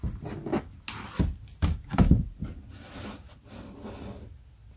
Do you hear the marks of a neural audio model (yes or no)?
no